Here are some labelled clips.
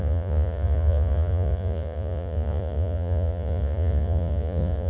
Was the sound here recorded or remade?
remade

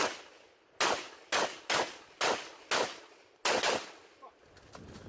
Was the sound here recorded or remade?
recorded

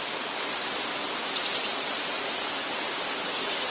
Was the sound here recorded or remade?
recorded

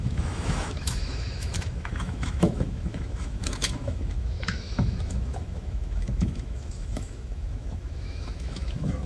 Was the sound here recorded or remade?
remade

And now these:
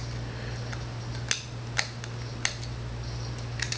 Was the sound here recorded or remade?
recorded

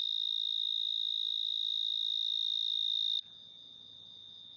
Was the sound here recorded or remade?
recorded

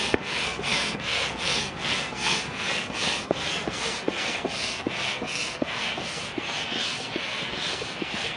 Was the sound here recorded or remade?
remade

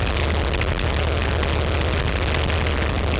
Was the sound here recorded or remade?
recorded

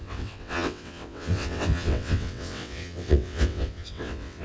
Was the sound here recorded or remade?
remade